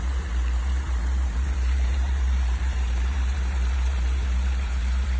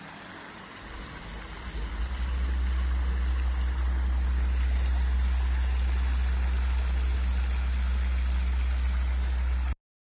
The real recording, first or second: second